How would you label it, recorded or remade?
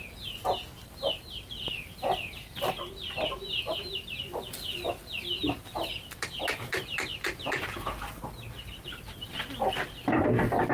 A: recorded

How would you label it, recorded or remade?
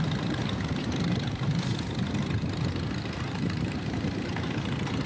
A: remade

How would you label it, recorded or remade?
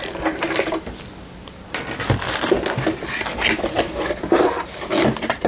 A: recorded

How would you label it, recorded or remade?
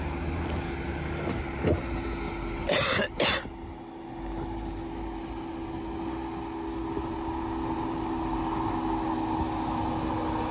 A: recorded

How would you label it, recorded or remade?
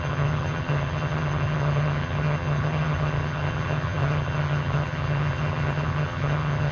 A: remade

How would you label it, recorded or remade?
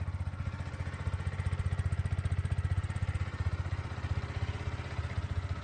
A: recorded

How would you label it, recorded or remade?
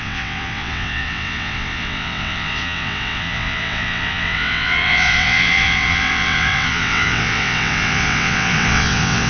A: remade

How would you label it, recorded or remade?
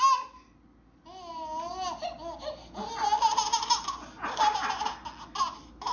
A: recorded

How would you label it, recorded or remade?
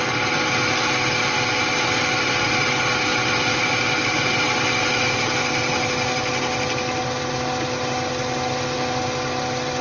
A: recorded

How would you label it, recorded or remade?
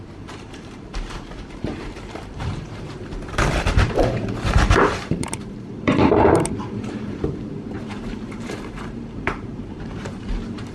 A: remade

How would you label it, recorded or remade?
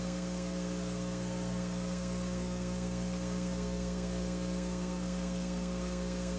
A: remade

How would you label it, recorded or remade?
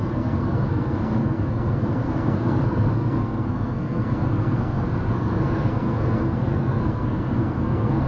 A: remade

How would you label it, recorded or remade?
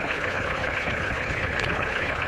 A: remade